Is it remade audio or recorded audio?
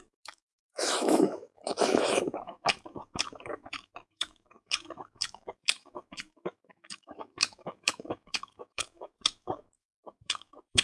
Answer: remade